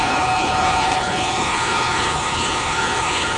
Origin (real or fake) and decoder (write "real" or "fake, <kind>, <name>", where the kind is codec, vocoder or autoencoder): fake, codec, HILCodec